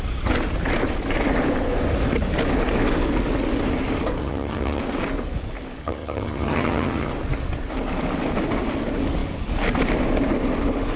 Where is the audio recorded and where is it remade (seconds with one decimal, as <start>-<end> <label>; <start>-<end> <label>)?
0.0-4.2 recorded; 4.2-4.8 remade; 4.8-5.8 recorded; 5.8-7.1 remade; 7.1-11.0 recorded